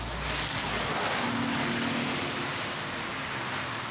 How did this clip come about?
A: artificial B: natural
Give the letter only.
B